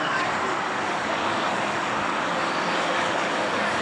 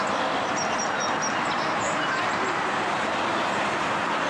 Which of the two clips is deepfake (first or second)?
first